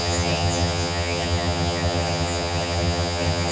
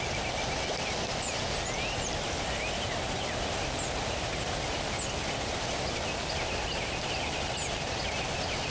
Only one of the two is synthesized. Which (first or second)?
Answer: first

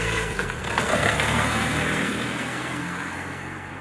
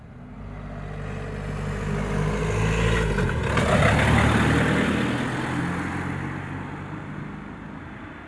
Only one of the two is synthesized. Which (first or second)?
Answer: first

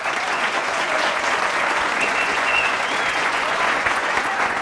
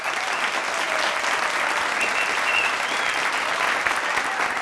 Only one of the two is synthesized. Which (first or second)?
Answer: first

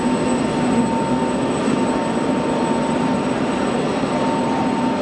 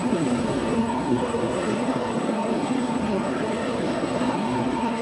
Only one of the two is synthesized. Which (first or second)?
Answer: second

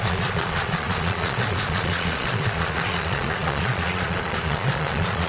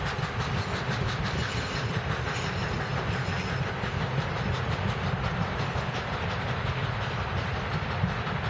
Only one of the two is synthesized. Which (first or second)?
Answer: first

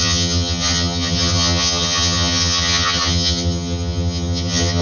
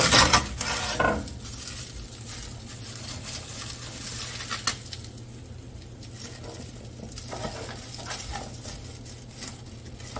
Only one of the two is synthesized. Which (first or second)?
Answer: first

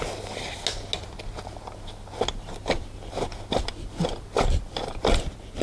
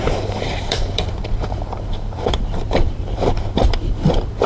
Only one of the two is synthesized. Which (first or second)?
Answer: second